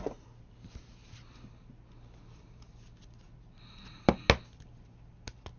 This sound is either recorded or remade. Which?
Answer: recorded